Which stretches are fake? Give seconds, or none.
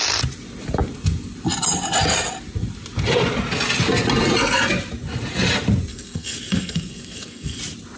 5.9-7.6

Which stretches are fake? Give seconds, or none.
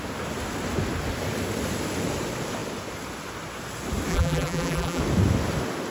4.1-5.0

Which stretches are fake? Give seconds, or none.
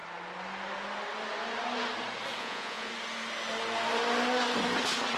2.4-2.9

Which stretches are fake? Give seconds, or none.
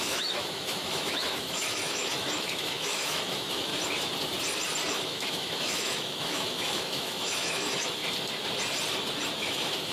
0.0-3.7; 4.9-8.0; 9.4-9.9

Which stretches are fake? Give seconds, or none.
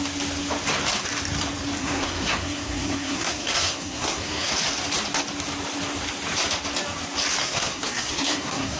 1.8-4.5; 7.4-8.8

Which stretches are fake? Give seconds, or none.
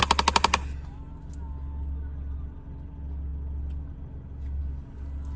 none